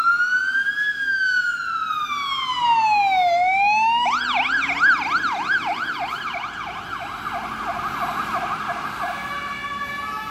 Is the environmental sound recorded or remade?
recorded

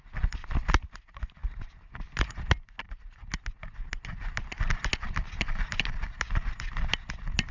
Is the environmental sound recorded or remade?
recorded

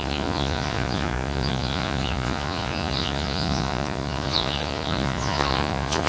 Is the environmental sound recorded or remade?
remade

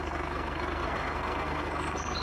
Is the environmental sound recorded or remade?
remade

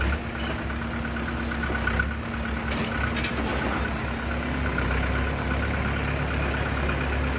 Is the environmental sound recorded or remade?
recorded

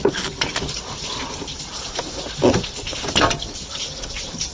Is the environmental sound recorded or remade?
recorded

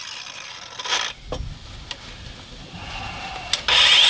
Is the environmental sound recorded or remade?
recorded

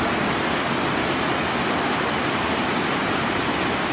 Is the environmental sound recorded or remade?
recorded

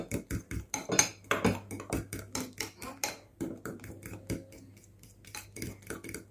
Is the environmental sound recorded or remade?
recorded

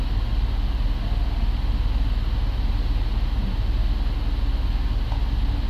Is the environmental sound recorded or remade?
recorded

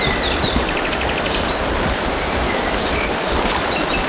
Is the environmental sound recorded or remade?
remade